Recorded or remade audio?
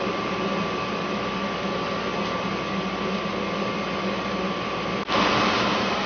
recorded